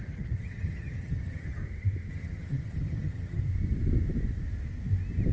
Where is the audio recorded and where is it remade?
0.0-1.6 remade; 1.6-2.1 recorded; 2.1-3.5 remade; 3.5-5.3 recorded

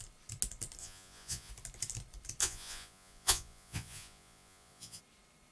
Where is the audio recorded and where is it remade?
0.0-0.8 recorded; 0.8-1.5 remade; 1.5-2.4 recorded; 2.4-5.0 remade; 5.0-5.5 recorded

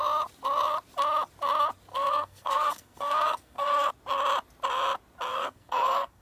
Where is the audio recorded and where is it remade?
0.0-1.9 recorded; 1.9-3.9 remade; 3.9-5.3 recorded; 5.3-6.2 remade

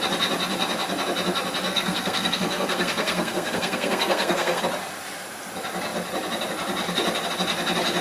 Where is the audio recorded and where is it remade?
0.0-1.7 recorded; 1.7-4.6 remade; 4.6-8.0 recorded

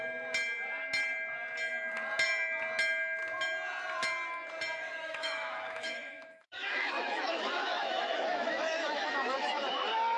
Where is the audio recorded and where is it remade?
0.0-4.8 recorded; 4.8-9.7 remade; 9.7-10.2 recorded

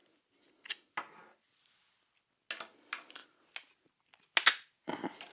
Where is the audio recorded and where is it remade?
0.0-5.3 recorded